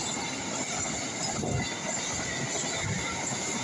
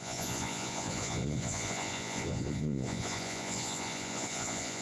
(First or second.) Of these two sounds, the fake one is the second